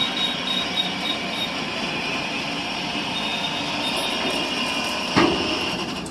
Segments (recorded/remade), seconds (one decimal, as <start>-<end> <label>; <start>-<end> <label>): 0.0-0.7 recorded; 0.7-3.3 remade; 3.3-5.0 recorded; 5.0-6.1 remade